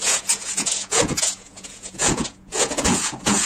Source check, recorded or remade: remade